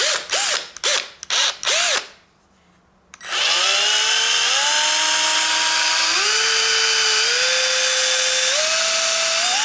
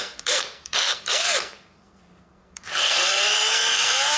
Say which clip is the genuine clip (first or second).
first